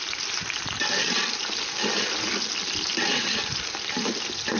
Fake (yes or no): no